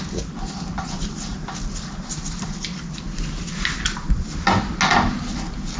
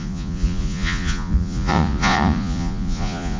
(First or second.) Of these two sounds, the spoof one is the second